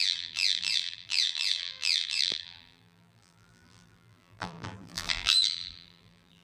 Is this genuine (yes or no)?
no